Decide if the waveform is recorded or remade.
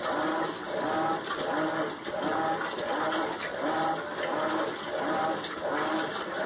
recorded